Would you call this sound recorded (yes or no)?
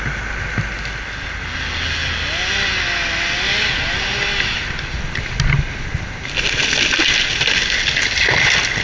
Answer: yes